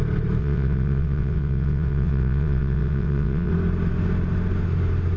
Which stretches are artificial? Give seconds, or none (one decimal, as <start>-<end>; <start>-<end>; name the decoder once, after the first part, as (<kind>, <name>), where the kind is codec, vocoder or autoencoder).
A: 0.4-3.5 (vocoder, WaveNeXt)